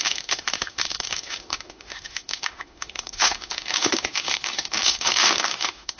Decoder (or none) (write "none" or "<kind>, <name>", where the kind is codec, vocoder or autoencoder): autoencoder, DAC-VAE